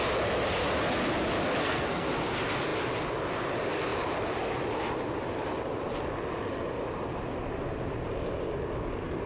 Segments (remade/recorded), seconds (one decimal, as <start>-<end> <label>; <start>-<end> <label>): 0.0-1.6 recorded; 1.6-2.1 remade; 2.1-9.3 recorded